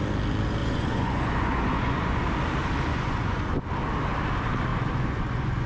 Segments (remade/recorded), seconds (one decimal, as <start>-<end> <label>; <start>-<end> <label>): 0.0-0.6 recorded; 0.6-2.2 remade; 2.2-2.9 recorded; 2.9-3.6 remade; 3.6-4.7 recorded; 4.7-5.7 remade